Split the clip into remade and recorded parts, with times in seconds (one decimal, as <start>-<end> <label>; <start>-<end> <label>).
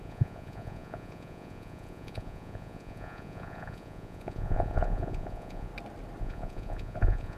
0.0-5.7 remade; 5.7-6.2 recorded; 6.2-7.4 remade